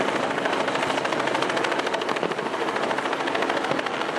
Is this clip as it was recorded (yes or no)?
yes